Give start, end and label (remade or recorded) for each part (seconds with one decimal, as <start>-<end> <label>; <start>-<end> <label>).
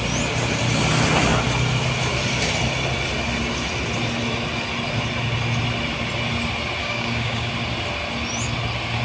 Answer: 0.0-6.8 recorded; 6.8-7.5 remade; 7.5-9.0 recorded